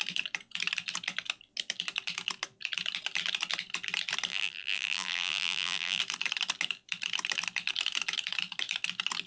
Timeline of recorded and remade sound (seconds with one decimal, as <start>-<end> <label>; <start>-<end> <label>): 0.0-4.3 recorded; 4.3-6.0 remade; 6.0-9.3 recorded